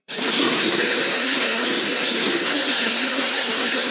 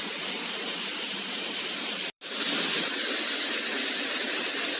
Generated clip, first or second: first